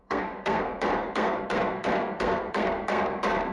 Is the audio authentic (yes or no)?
no